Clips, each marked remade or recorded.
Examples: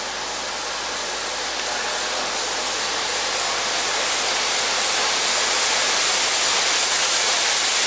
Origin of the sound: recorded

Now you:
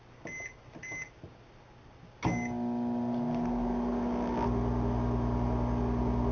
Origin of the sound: recorded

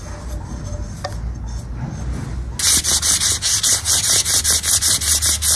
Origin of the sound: recorded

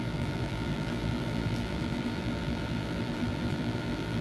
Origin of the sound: remade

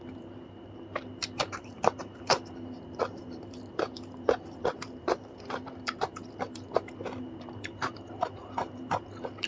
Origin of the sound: remade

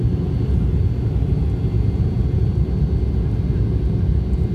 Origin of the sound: recorded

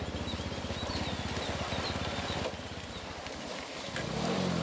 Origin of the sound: recorded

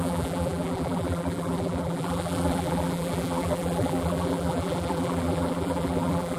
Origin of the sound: remade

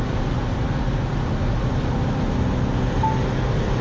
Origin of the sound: recorded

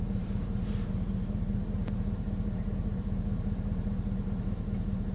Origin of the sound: remade